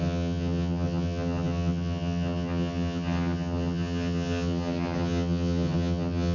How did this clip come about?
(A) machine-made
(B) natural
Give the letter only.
A